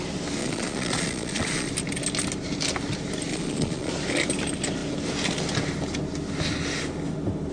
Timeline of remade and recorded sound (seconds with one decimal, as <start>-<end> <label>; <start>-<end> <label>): 0.0-0.4 recorded; 0.4-1.7 remade; 1.7-3.3 recorded; 3.3-3.9 remade; 3.9-7.5 recorded